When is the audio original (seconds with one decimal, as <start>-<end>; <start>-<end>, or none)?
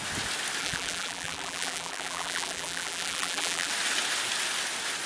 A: 0.0-0.6; 3.7-5.1